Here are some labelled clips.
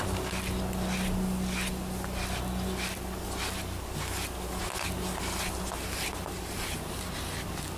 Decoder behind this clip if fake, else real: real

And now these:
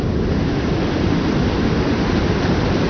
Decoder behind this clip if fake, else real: real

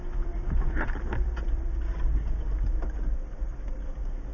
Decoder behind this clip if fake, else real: real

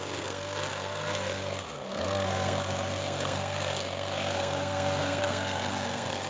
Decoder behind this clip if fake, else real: fake, codec, SNAC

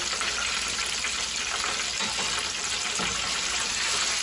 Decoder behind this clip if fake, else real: real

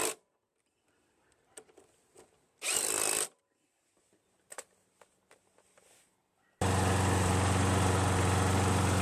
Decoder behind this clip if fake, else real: real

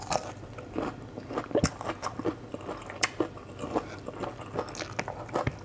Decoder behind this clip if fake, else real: real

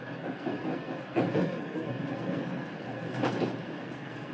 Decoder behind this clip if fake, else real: fake, codec, SNAC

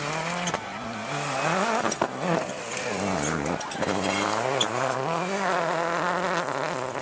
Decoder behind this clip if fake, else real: real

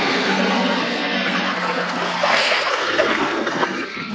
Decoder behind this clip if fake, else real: fake, codec, SNAC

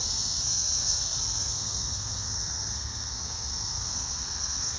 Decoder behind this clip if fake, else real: fake, codec, SNAC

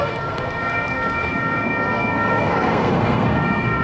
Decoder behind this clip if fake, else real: fake, codec, SNAC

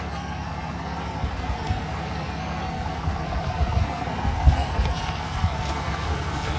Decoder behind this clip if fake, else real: fake, codec, SNAC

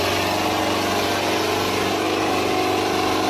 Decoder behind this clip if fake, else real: real